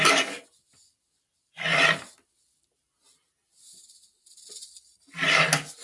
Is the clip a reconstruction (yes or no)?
no